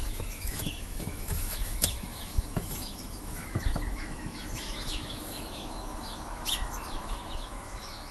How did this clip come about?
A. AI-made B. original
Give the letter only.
A